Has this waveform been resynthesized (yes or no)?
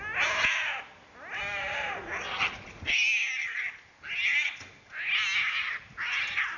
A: no